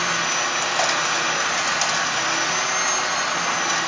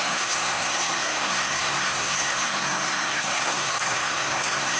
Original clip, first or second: first